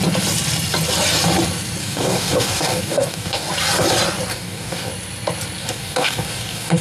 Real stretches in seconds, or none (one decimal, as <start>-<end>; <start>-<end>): 0.0-1.8; 3.5-4.3; 4.9-5.6